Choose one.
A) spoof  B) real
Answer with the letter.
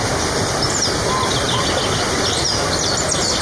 B